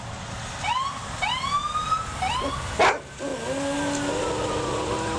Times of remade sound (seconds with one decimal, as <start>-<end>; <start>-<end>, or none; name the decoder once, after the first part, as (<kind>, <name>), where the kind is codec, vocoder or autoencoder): none